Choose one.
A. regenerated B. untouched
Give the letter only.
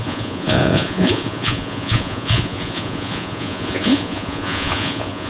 A